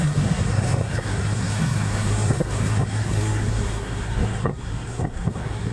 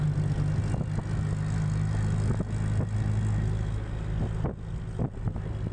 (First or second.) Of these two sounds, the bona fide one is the second